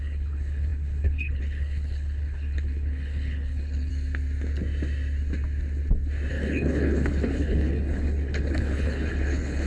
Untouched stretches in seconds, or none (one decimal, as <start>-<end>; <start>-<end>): 3.9-6.3